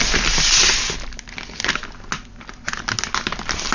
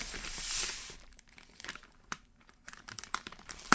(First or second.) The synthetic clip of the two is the second